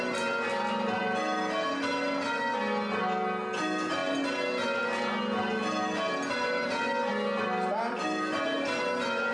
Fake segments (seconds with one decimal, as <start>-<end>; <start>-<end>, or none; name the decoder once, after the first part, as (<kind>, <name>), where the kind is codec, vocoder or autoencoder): none